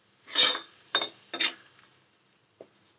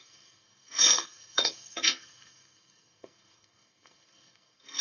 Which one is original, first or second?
first